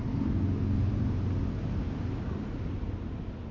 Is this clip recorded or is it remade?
recorded